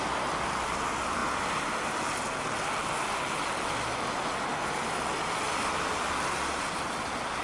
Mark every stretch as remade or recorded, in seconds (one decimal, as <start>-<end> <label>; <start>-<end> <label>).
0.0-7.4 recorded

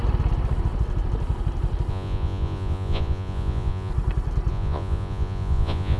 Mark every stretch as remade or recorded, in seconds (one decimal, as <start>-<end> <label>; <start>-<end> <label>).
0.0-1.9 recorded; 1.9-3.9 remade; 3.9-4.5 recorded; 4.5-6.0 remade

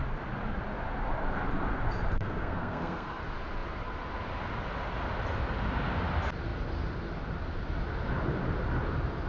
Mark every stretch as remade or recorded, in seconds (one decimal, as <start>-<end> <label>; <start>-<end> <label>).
0.0-2.1 recorded; 2.1-3.2 remade; 3.2-9.3 recorded

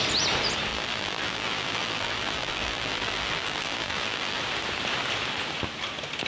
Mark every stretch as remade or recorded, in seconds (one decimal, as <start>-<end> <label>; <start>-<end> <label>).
0.0-0.7 recorded; 0.7-4.4 remade; 4.4-6.3 recorded

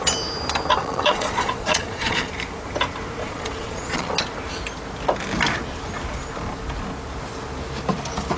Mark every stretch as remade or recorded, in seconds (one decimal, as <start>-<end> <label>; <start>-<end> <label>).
0.0-0.8 recorded; 0.8-2.3 remade; 2.3-3.2 recorded; 3.2-4.1 remade; 4.1-8.4 recorded